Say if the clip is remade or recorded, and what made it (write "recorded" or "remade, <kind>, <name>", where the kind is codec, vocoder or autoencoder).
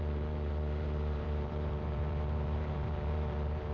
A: remade, vocoder, BigVGAN v2